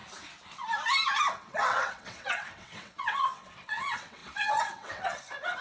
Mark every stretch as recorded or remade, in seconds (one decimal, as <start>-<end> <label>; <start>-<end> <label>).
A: 0.0-1.3 recorded; 1.3-5.6 remade